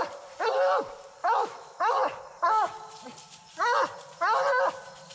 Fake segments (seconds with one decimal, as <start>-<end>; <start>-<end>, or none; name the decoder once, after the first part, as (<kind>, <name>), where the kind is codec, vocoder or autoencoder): 1.2-1.8 (autoencoder, DAC-VAE)